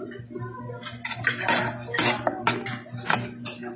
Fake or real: real